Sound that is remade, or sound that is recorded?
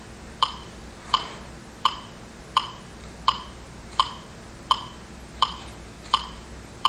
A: remade